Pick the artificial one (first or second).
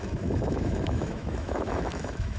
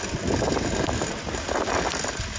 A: first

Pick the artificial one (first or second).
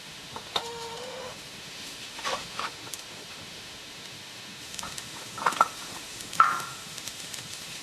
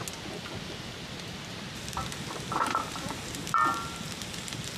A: first